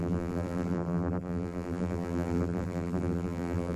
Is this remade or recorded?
remade